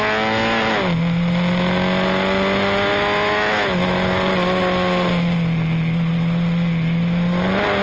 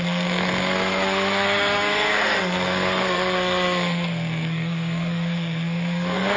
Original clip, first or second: first